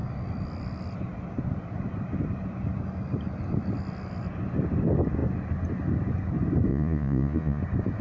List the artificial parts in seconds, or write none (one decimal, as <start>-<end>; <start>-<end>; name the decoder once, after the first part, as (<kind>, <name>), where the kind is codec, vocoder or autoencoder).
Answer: 6.7-7.6 (vocoder, Vocos)